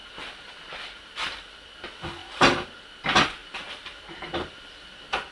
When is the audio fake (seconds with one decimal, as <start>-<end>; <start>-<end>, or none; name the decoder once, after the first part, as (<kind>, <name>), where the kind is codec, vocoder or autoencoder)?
0.0-0.5 (vocoder, BigVGAN v2); 2.2-2.8; 3.4-4.2